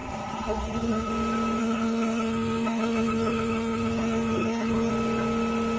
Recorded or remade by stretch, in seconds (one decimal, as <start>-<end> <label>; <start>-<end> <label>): 0.0-1.1 remade; 1.1-1.6 recorded; 1.6-4.9 remade; 4.9-5.8 recorded